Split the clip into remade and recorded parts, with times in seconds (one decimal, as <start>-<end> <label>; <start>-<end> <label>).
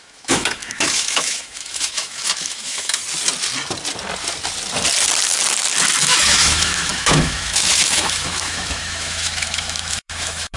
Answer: 0.0-3.0 remade; 3.0-6.0 recorded; 6.0-10.6 remade